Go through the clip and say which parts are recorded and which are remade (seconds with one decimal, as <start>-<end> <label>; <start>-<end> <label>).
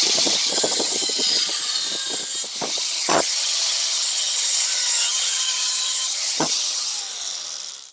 0.0-1.5 remade; 1.5-2.7 recorded; 2.7-6.9 remade; 6.9-7.9 recorded